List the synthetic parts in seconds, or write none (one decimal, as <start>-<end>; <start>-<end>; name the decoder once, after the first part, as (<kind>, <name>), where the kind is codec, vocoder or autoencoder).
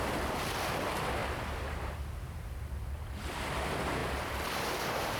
1.2-3.5 (vocoder, BigVGAN v2)